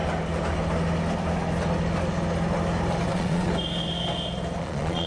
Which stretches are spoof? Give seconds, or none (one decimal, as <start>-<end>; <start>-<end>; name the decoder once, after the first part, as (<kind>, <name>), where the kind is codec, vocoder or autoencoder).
3.1-3.5 (vocoder, Vocos); 4.6-5.1